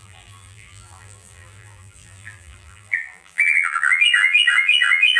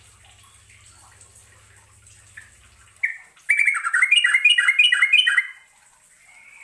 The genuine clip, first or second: second